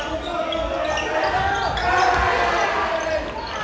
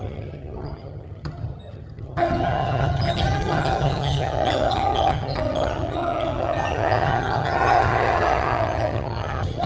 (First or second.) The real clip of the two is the first